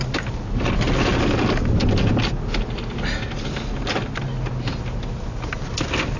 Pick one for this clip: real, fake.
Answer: real